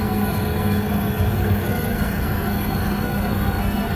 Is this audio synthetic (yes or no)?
yes